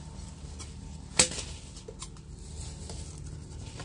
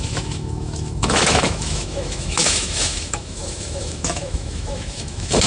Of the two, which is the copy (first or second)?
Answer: second